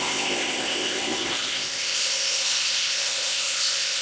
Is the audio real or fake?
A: fake